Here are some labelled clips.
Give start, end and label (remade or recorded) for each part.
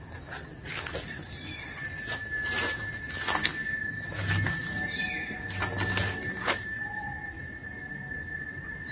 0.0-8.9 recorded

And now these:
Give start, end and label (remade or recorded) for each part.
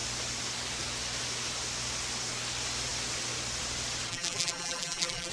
0.0-4.1 recorded; 4.1-5.3 remade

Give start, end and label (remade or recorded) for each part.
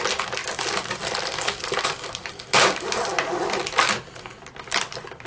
0.0-0.4 recorded; 0.4-2.3 remade; 2.3-5.3 recorded